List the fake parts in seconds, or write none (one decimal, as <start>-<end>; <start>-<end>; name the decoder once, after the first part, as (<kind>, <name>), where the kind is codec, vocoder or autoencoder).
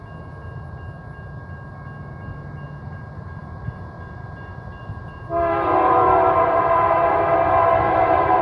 3.4-8.4 (vocoder, BigVGAN v2)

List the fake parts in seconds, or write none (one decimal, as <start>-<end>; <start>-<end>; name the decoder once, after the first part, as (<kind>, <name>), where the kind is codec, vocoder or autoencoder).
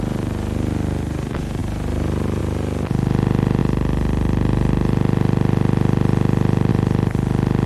none